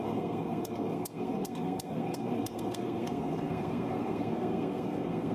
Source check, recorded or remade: remade